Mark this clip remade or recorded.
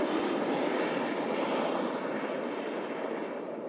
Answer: recorded